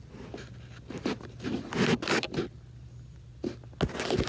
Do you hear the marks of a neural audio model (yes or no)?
no